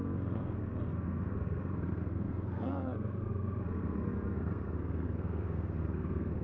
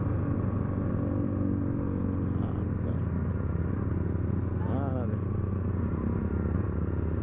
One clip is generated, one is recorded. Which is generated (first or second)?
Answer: first